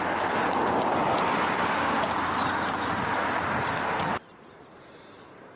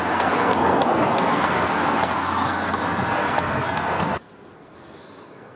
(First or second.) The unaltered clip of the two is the first